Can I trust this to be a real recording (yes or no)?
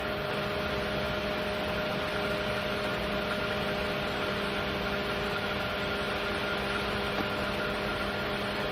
yes